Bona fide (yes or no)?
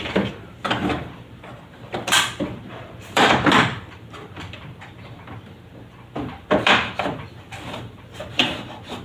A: no